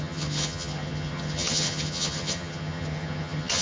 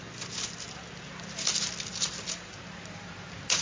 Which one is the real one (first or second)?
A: second